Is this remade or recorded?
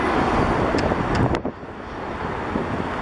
recorded